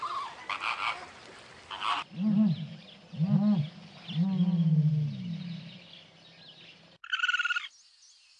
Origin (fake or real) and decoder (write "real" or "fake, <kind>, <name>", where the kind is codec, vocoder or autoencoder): real